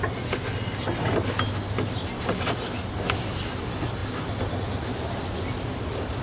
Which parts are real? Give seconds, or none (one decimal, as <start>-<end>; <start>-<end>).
0.0-6.2